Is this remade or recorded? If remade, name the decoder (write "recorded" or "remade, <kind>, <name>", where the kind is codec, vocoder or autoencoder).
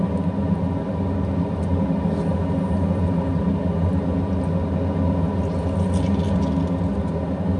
recorded